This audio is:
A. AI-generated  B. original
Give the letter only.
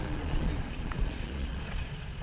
A